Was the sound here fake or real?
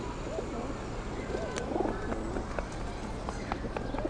real